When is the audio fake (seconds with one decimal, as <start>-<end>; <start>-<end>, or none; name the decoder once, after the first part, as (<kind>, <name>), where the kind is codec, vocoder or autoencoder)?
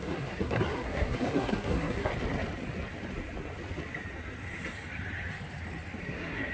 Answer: 0.0-2.1 (codec, SNAC); 6.0-6.5